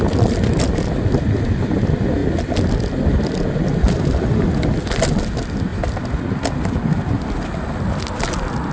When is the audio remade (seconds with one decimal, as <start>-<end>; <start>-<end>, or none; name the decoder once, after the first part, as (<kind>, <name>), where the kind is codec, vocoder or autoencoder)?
none